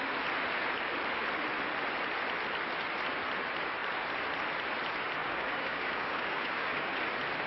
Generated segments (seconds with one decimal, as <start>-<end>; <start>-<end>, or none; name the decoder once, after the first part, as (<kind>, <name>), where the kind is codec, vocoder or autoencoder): 5.2-7.0 (codec, DAC)